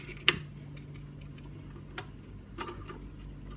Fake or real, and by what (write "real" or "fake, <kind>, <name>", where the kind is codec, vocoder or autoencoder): real